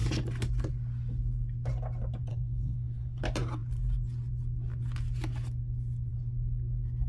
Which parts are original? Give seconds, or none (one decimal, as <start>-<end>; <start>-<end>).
0.0-2.3; 3.2-7.1